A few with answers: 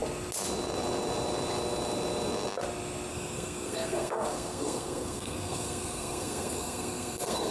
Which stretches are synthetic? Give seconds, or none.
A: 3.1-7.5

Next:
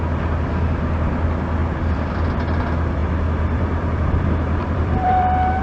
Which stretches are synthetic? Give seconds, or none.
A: 1.6-2.1; 3.0-5.6

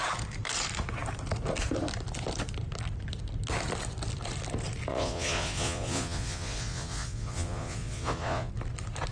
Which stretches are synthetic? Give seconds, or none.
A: 4.9-8.5

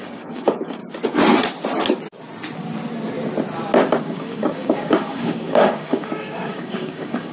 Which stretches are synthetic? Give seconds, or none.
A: 0.0-0.8; 4.0-7.3

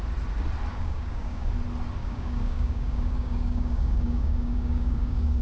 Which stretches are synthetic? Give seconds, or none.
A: 0.7-1.5; 2.0-5.4